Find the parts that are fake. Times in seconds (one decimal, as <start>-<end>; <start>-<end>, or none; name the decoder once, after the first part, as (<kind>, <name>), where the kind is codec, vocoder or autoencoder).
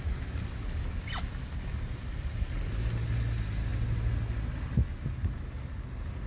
none